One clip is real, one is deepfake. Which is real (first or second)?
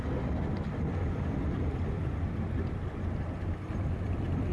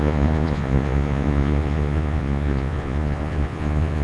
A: first